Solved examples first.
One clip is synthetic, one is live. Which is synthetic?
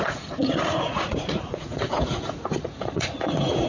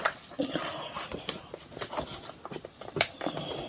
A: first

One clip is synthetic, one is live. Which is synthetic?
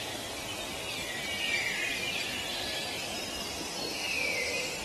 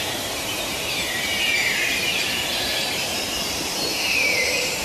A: second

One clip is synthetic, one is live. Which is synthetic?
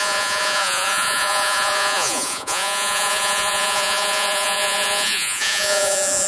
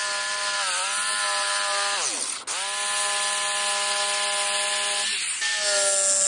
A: first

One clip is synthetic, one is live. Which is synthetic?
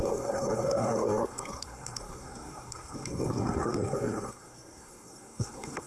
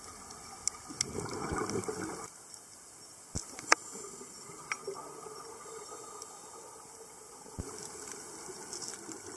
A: first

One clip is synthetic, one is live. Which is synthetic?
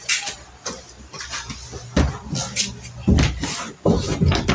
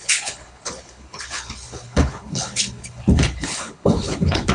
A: second